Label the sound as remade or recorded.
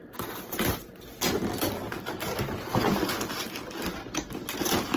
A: recorded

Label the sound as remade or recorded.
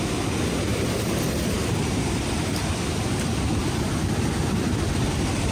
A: recorded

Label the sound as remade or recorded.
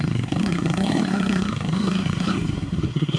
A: remade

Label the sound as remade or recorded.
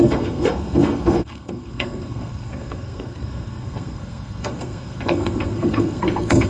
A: remade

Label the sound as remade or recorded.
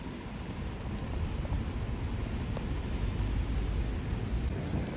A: recorded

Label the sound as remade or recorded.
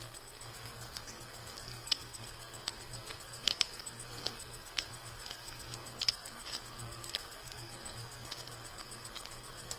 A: remade